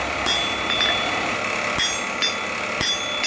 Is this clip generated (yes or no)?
no